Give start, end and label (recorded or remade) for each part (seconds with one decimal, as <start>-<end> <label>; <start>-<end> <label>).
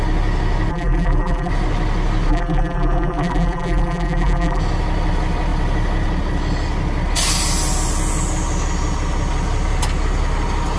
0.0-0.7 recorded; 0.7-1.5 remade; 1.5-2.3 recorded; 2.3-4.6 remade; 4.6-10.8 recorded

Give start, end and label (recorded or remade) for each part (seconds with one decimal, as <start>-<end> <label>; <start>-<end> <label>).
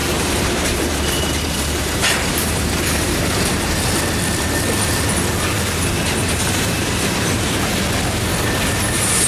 0.0-4.0 remade; 4.0-6.2 recorded; 6.2-7.8 remade; 7.8-9.3 recorded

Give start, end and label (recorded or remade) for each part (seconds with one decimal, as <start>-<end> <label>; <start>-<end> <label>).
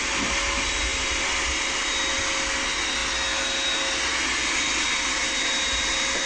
0.0-6.3 recorded